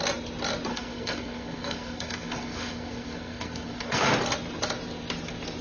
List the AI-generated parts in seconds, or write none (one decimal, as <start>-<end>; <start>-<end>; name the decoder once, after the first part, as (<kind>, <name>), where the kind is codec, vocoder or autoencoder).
0.7-4.1 (codec, SNAC)